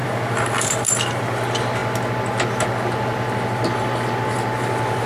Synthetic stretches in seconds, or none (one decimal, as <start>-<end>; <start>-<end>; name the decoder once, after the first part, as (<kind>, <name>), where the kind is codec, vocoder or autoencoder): 0.0-1.2 (vocoder, BigVGAN v2)